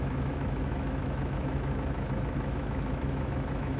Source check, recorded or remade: remade